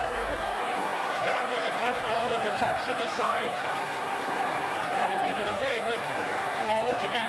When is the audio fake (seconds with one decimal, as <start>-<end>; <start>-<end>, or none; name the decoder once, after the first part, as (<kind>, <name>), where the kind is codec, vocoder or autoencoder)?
0.0-7.3 (codec, SNAC)